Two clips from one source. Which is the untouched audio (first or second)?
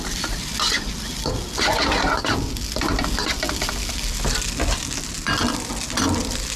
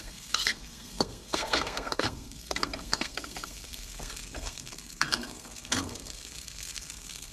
first